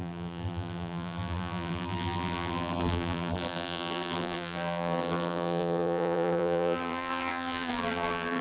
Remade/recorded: remade